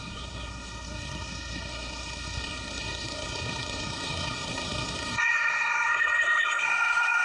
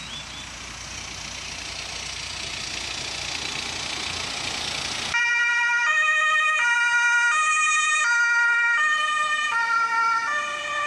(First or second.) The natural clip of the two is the second